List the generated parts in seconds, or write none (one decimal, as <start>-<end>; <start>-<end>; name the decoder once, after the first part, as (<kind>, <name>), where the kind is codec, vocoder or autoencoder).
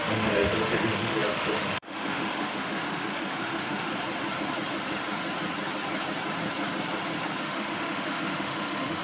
0.0-3.9 (autoencoder, DAC-VAE); 7.4-9.0